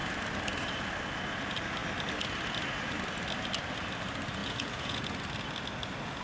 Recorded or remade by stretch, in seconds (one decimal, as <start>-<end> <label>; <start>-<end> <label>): 0.0-4.4 recorded; 4.4-5.0 remade; 5.0-6.2 recorded